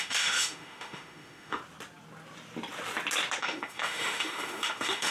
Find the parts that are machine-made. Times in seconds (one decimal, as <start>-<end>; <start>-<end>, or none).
0.0-1.6; 3.4-5.1